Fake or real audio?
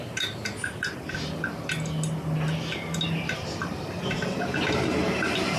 real